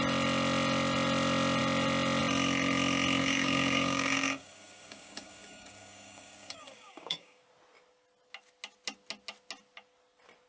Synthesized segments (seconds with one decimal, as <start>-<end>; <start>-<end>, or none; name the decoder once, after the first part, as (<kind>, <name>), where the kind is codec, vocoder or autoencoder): 3.2-7.4 (codec, DAC)